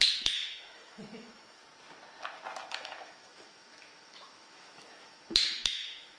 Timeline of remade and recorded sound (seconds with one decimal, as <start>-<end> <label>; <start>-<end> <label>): 0.0-1.6 remade; 1.6-2.7 recorded; 2.7-6.2 remade